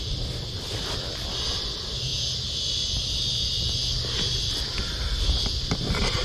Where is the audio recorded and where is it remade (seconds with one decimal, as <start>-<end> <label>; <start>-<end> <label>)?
0.0-6.2 recorded

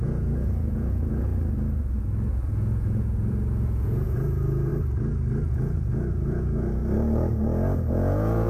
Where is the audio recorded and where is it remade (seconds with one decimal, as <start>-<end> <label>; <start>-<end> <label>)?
0.0-1.3 remade; 1.3-2.3 recorded; 2.3-4.7 remade; 4.7-5.5 recorded; 5.5-6.8 remade; 6.8-7.9 recorded; 7.9-8.5 remade

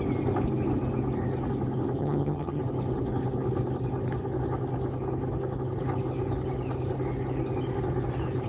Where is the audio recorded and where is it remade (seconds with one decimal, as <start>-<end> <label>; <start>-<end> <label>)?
0.0-2.0 recorded; 2.0-2.6 remade; 2.6-8.5 recorded

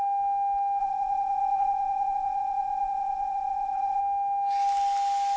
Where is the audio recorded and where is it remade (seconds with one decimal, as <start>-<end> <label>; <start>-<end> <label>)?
0.0-0.8 recorded; 0.8-4.0 remade; 4.0-5.4 recorded

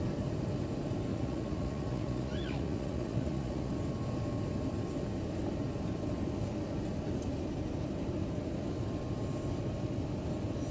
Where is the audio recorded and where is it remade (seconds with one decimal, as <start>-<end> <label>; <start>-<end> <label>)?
0.0-1.1 recorded; 1.1-3.7 remade; 3.7-10.7 recorded